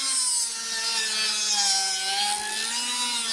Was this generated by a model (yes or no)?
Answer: no